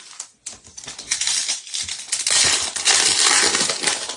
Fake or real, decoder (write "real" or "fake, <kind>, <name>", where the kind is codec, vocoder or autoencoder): real